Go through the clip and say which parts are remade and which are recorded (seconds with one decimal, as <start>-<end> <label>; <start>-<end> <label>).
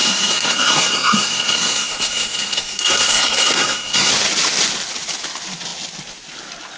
0.0-4.1 remade; 4.1-6.8 recorded